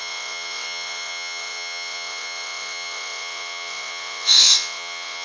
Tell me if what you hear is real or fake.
fake